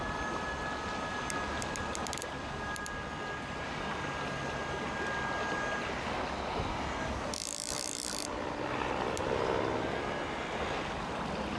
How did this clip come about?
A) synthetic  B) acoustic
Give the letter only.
B